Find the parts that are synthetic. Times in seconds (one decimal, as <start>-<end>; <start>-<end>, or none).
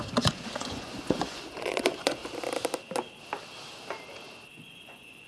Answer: 0.0-2.2; 4.5-5.3